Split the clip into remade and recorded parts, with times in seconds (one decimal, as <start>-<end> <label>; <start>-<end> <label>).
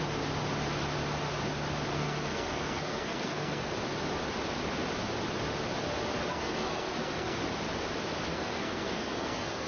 0.0-1.9 recorded; 1.9-3.7 remade; 3.7-6.3 recorded; 6.3-7.4 remade; 7.4-8.3 recorded; 8.3-9.7 remade